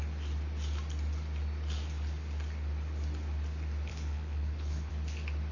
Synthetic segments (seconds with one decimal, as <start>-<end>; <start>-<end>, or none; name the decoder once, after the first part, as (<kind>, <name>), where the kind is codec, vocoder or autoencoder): 3.9-4.9 (codec, HILCodec)

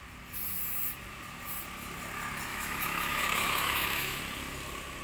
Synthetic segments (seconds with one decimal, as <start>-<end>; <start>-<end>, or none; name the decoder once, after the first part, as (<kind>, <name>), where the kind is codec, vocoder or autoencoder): 2.5-4.2 (autoencoder, DAC-VAE)

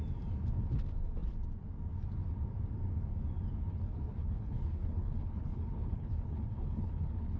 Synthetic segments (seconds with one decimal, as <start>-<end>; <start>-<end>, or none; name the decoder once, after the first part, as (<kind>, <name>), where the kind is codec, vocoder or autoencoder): 3.7-7.4 (codec, HILCodec)

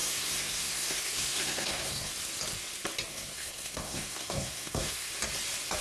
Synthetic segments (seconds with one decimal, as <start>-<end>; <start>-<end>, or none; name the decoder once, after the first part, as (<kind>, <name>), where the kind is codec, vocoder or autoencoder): 0.0-2.1 (codec, SNAC); 3.1-5.1

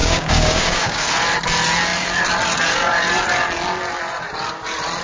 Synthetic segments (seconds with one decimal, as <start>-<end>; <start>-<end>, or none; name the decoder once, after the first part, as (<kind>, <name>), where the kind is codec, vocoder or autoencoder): 0.0-1.1 (codec, DAC)

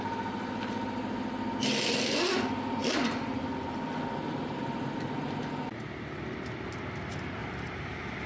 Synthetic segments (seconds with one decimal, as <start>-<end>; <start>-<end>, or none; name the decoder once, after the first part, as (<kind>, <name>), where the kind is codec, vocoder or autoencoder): none

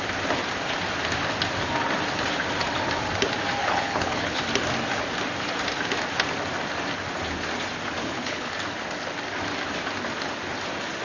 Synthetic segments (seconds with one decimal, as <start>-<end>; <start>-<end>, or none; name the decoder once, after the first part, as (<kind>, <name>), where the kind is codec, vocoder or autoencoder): 3.6-4.4 (codec, HILCodec); 8.0-8.5

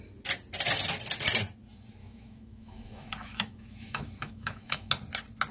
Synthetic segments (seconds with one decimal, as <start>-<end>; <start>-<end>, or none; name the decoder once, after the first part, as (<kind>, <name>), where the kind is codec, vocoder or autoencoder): 2.0-4.9 (autoencoder, DAC-VAE)